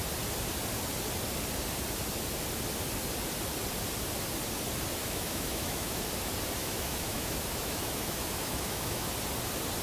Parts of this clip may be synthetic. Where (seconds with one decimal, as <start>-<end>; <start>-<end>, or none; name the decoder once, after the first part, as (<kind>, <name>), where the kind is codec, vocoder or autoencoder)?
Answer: 5.0-6.0 (autoencoder, DAC-VAE); 6.6-9.1